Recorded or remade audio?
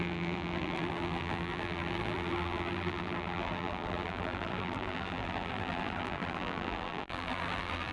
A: remade